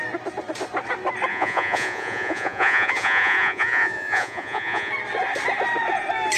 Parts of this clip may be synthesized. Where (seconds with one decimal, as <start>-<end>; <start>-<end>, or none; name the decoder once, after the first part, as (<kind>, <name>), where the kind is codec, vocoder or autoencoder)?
1.3-4.9 (vocoder, Vocos)